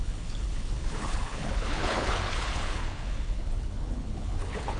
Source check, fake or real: fake